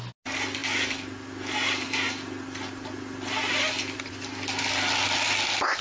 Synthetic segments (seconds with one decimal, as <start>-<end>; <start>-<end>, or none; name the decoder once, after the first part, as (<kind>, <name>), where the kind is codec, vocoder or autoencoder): none